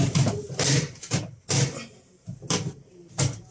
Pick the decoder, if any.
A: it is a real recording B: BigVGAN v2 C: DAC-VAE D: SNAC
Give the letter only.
A